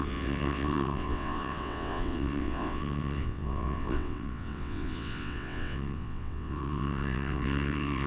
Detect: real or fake fake